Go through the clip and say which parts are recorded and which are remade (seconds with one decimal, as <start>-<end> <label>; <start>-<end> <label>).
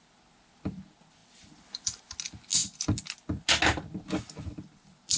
0.0-1.2 recorded; 1.2-2.0 remade; 2.0-5.2 recorded